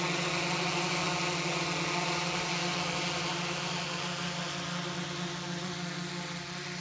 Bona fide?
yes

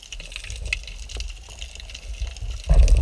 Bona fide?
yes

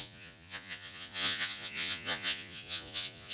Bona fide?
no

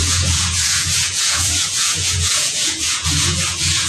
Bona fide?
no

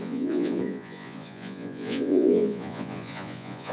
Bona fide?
no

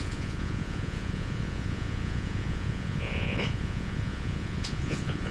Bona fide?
no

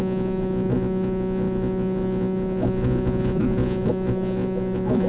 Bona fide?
no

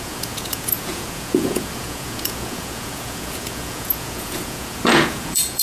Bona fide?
no